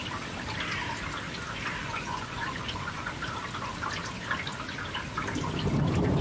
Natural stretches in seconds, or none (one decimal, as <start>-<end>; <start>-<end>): 0.0-1.8; 3.1-6.2